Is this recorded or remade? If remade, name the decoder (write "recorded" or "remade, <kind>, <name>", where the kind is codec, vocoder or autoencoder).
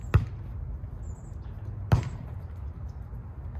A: recorded